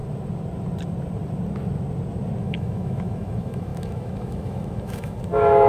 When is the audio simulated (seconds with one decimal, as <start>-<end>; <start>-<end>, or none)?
2.4-5.7